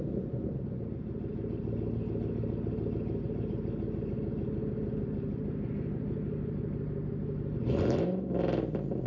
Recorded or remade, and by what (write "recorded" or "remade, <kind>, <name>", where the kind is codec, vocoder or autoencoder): recorded